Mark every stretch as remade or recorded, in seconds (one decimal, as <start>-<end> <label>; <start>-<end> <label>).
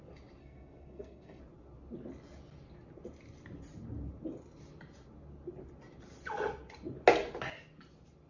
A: 0.0-0.4 recorded; 0.4-1.4 remade; 1.4-8.3 recorded